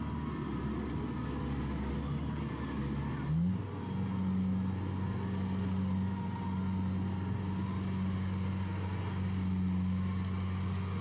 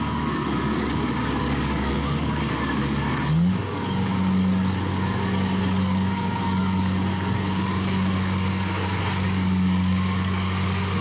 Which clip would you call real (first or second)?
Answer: first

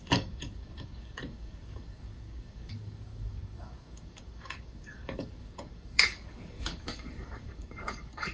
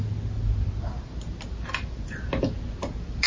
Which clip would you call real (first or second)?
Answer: second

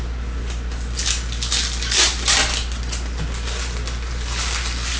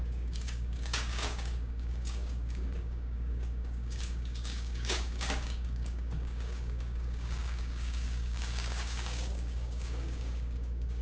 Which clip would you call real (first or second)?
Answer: first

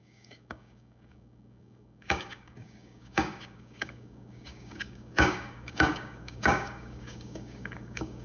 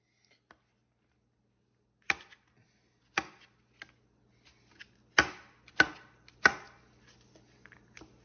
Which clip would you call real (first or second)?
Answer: second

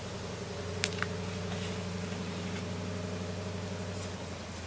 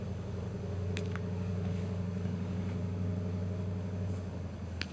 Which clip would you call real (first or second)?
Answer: first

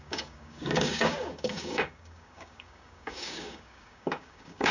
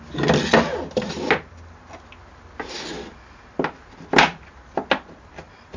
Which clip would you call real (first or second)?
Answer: second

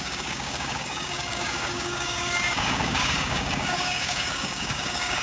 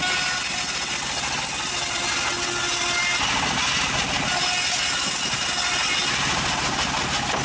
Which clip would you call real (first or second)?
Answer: second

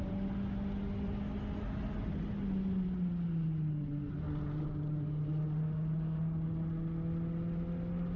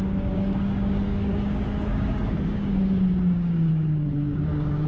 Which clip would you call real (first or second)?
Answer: first